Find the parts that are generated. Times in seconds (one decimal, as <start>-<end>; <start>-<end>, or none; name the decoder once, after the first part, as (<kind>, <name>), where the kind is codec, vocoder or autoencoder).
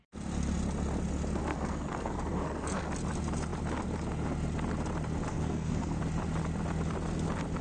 1.5-2.9 (codec, SNAC); 5.3-6.0